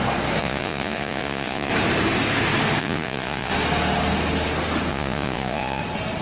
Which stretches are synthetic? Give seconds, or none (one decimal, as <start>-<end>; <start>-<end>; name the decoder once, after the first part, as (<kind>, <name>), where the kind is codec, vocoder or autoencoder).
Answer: 0.4-1.7 (vocoder, Vocos); 2.8-3.5; 4.9-5.8